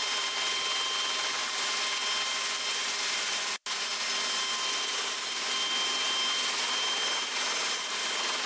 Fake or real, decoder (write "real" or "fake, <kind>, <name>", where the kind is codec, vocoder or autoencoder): real